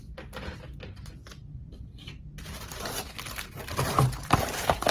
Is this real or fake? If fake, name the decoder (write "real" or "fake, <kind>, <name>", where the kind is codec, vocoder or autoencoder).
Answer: real